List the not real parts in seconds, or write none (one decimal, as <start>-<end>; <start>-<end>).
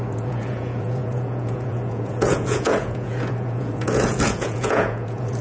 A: 0.0-5.4